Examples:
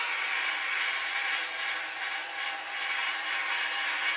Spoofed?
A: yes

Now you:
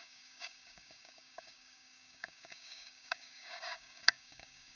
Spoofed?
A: yes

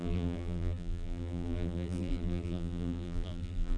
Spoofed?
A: yes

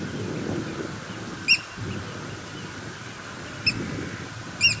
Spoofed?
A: no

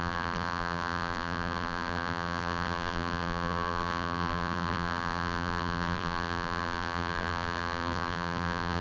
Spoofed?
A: yes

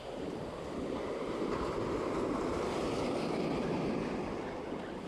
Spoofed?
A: no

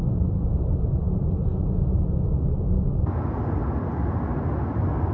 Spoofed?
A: no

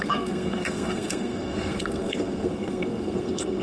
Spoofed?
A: yes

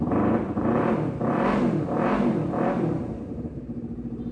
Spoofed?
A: yes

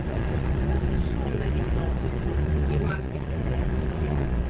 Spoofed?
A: yes